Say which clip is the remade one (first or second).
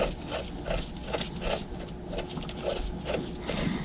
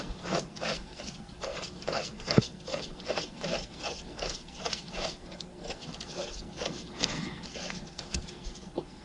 second